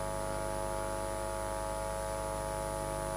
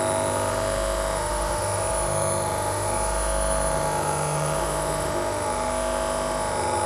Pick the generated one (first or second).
second